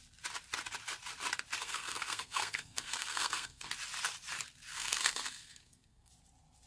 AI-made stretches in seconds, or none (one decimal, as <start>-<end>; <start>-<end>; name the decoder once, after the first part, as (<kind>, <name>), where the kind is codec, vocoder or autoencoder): 1.6-3.7 (codec, SNAC); 4.7-6.1